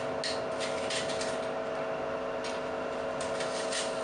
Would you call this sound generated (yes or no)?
no